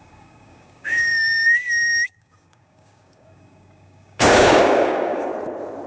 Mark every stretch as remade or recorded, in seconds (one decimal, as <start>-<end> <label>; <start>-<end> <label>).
0.0-5.3 remade; 5.3-5.9 recorded